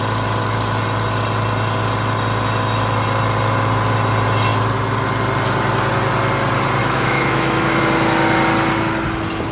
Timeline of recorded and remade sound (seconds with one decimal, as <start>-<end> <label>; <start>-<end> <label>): 0.0-6.8 recorded; 6.8-7.8 remade; 7.8-9.5 recorded